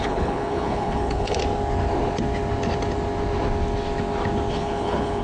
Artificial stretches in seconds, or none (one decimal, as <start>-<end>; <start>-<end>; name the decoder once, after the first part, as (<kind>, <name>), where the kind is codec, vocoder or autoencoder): 0.0-1.4 (codec, HILCodec); 4.5-5.2

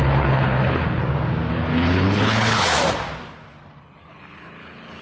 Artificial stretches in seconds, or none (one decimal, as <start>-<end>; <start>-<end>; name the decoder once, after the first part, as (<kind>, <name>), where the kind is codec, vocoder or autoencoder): 0.0-1.0 (codec, HILCodec); 1.5-2.7; 3.8-5.0

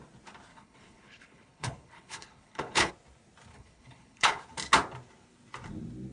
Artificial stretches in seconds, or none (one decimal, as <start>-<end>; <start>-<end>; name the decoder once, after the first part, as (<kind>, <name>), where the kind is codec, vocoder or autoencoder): 0.5-2.9 (codec, HILCodec); 3.5-4.4

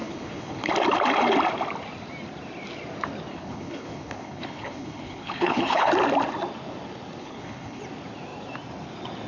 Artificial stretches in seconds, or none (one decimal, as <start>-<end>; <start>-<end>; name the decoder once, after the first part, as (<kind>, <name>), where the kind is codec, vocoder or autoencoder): 0.0-0.7 (codec, HILCodec); 3.3-5.9; 7.2-7.8

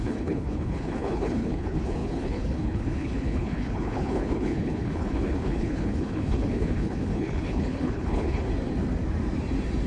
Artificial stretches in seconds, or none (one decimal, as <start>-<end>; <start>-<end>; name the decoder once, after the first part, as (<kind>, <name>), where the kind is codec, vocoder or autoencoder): 0.0-8.5 (codec, HILCodec)